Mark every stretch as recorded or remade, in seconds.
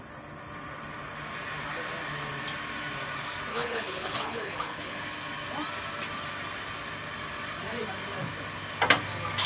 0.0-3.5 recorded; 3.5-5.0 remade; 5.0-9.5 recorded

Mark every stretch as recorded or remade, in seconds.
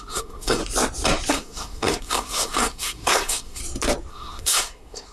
0.0-0.6 remade; 0.6-1.3 recorded; 1.3-3.6 remade; 3.6-4.1 recorded; 4.1-5.1 remade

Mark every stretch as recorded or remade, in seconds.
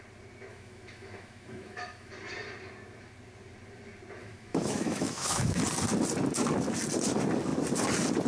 0.0-0.5 recorded; 0.5-2.1 remade; 2.1-4.2 recorded; 4.2-5.6 remade; 5.6-8.3 recorded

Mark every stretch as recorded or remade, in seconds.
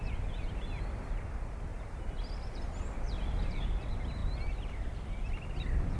0.0-1.7 recorded; 1.7-2.2 remade; 2.2-6.0 recorded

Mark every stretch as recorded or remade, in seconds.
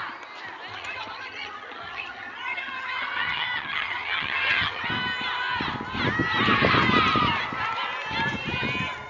0.0-0.7 recorded; 0.7-4.9 remade; 4.9-9.1 recorded